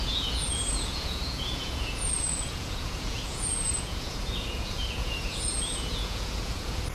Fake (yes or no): yes